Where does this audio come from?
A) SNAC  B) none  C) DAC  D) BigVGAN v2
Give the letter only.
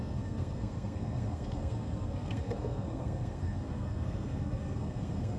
A